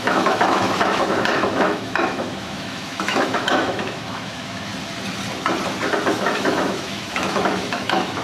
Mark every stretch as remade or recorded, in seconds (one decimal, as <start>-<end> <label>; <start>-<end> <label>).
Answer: 0.0-4.7 remade; 4.7-6.1 recorded; 6.1-8.2 remade